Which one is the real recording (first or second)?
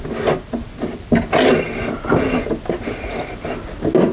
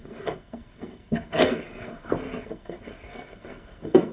first